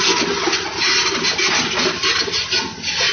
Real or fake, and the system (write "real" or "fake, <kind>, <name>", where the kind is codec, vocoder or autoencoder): real